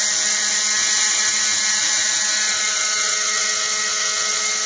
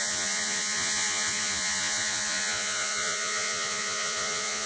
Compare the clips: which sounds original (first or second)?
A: first